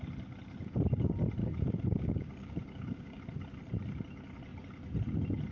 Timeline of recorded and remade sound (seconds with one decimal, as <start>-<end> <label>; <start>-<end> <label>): 0.0-1.4 recorded; 1.4-3.2 remade; 3.2-5.5 recorded

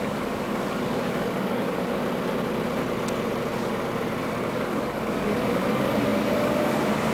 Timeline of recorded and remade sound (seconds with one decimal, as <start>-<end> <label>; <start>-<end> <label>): 0.0-2.0 remade; 2.0-4.4 recorded; 4.4-7.1 remade

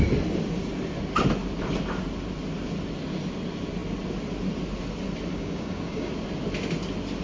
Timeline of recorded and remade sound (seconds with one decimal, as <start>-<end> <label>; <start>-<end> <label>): 0.0-5.3 recorded; 5.3-6.1 remade; 6.1-7.2 recorded

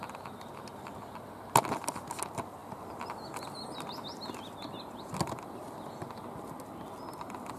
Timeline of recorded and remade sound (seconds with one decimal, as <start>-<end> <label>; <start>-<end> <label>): 0.0-7.6 recorded

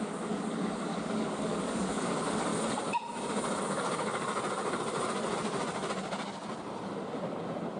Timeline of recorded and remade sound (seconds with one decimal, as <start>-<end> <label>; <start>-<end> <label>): 0.0-2.5 remade; 2.5-3.6 recorded; 3.6-4.3 remade; 4.3-7.8 recorded

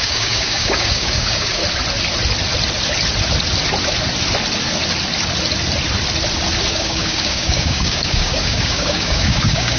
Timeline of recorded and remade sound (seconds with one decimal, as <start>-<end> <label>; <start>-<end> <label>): 0.0-1.6 remade; 1.6-6.7 recorded; 6.7-9.8 remade

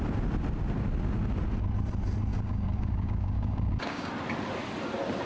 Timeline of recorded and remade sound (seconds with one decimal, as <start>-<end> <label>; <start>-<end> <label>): 0.0-2.3 recorded; 2.3-4.1 remade; 4.1-5.3 recorded

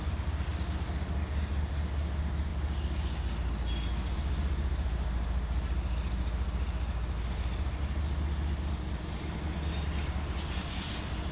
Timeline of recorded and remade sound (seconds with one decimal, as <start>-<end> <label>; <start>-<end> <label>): 0.0-11.3 recorded